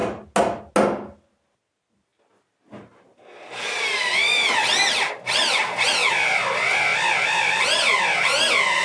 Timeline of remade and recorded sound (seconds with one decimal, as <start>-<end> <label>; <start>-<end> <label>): 0.0-8.8 recorded